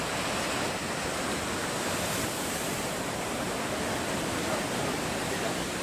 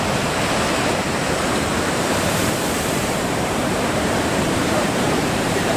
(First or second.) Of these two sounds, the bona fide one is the first